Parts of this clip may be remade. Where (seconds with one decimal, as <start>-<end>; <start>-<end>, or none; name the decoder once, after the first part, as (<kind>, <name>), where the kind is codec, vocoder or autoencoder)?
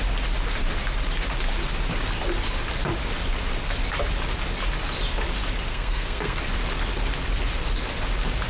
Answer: 5.7-6.4 (codec, SNAC)